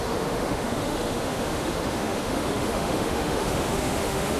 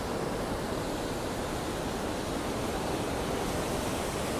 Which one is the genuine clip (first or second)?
second